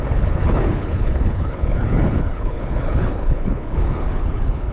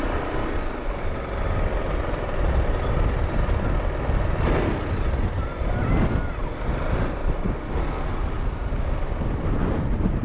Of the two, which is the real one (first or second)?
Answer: second